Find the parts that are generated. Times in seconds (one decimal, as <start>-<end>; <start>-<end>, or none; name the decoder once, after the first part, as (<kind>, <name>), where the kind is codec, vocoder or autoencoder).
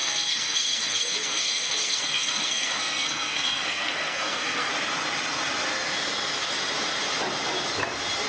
0.0-4.7 (codec, SNAC)